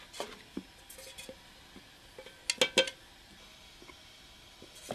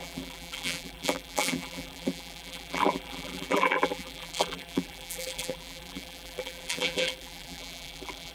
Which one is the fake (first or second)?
second